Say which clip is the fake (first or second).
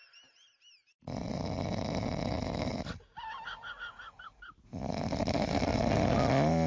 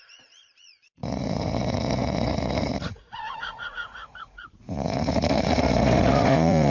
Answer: second